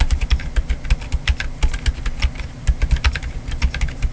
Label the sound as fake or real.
real